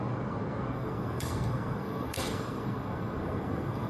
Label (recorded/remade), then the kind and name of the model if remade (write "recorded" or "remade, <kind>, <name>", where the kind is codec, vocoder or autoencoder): remade, codec, SNAC